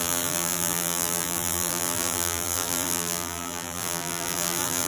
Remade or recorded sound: remade